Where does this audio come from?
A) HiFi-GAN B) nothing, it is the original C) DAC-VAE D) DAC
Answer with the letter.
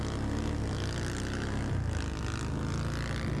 B